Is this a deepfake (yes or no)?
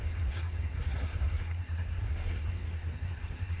yes